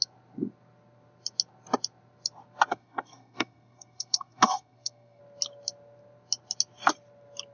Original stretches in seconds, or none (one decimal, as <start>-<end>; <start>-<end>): 0.0-2.7; 5.2-7.5